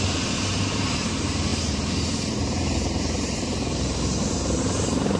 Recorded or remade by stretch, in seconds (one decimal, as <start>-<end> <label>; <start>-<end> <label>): 0.0-5.2 remade